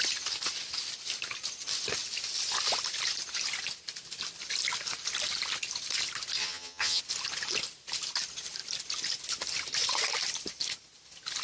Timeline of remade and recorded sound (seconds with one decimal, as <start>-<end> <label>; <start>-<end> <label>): 0.0-6.4 recorded; 6.4-7.0 remade; 7.0-11.4 recorded